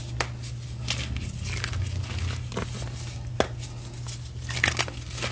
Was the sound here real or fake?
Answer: real